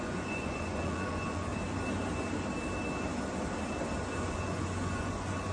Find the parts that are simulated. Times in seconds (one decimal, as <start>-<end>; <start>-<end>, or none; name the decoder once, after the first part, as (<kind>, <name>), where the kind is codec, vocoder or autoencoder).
0.0-1.5 (vocoder, Vocos); 4.2-5.5